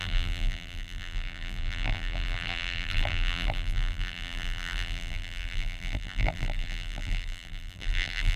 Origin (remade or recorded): remade